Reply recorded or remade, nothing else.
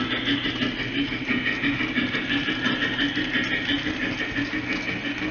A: recorded